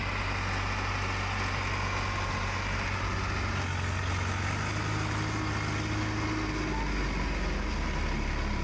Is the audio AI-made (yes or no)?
no